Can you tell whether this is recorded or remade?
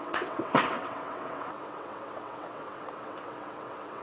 remade